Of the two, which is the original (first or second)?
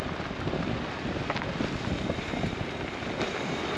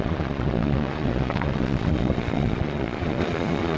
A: first